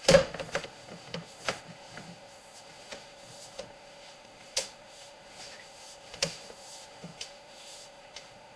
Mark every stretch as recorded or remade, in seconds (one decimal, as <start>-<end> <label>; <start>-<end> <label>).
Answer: 0.0-8.6 remade